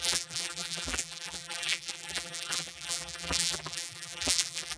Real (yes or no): no